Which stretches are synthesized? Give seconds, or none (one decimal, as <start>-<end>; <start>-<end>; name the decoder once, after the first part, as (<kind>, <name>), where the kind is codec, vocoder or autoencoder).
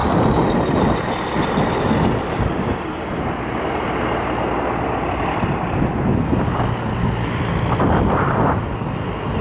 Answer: none